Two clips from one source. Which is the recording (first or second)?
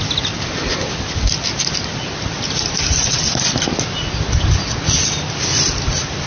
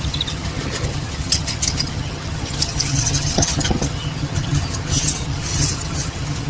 first